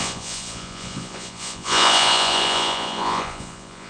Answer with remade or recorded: remade